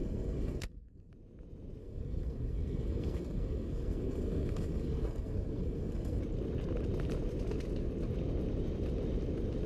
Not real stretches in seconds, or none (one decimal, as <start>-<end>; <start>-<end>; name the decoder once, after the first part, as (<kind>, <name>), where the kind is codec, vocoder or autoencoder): 0.0-1.1 (codec, SNAC); 1.8-6.2